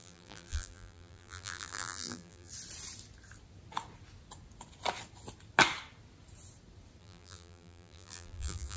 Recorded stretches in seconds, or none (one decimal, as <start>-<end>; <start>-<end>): 2.5-7.0